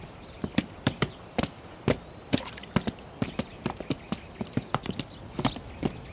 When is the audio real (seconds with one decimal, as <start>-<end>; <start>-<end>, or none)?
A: 0.0-0.5; 1.2-6.1